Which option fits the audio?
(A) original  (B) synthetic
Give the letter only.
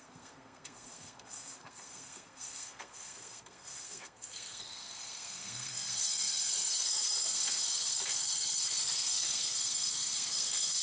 B